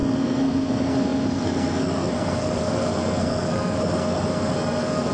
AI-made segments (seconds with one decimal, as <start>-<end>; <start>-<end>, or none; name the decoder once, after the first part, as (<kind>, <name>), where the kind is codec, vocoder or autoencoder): 0.0-5.1 (codec, SNAC)